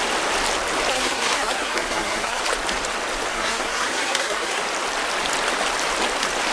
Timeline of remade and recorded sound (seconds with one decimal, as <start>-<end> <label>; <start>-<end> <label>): 0.0-0.9 recorded; 0.9-2.4 remade; 2.4-3.3 recorded; 3.3-4.6 remade; 4.6-6.5 recorded